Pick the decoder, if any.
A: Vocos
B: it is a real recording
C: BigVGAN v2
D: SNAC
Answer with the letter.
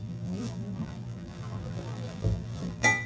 C